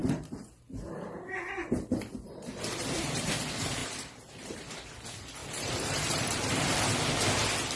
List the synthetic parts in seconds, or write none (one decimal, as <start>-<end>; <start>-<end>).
0.0-3.4; 3.8-4.6; 5.4-7.0